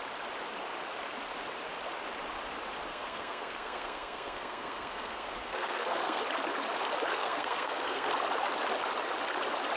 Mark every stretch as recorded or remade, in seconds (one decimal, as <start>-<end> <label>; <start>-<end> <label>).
0.0-2.9 recorded; 2.9-6.2 remade; 6.2-7.1 recorded; 7.1-8.1 remade; 8.1-9.8 recorded